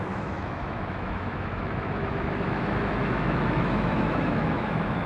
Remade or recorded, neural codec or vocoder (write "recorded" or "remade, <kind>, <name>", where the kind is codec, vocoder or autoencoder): remade, autoencoder, DAC-VAE